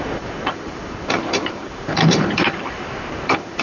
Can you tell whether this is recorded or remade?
remade